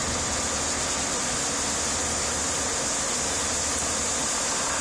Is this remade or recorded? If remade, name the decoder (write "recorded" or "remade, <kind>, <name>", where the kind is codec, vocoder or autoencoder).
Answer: recorded